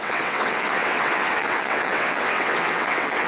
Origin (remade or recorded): remade